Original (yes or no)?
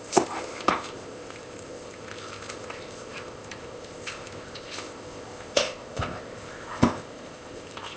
no